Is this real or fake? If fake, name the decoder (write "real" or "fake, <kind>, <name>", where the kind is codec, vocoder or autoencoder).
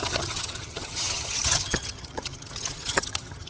fake, vocoder, HiFi-GAN